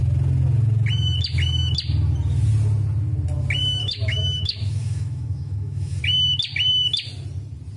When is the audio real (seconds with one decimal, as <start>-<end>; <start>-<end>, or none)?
0.0-3.8; 6.0-7.8